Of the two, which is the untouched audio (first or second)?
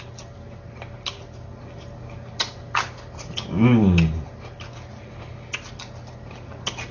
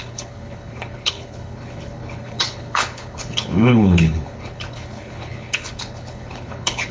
first